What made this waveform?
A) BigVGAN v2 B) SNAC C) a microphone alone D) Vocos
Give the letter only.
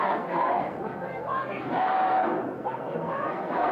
B